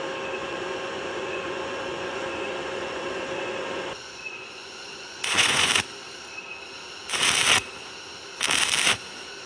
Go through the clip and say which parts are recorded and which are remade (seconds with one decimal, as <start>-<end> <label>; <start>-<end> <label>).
0.0-0.4 recorded; 0.4-5.7 remade; 5.7-9.5 recorded